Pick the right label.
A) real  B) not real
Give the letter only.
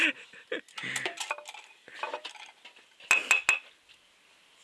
A